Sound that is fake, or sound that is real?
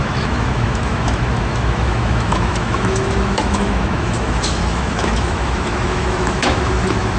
fake